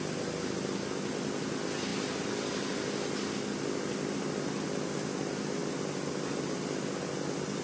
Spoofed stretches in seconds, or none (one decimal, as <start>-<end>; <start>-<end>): none